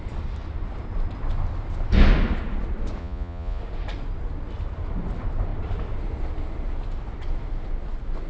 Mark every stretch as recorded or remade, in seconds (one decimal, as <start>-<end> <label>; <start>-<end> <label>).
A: 0.0-3.0 recorded; 3.0-3.6 remade; 3.6-8.3 recorded